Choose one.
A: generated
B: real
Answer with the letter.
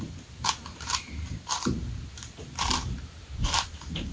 A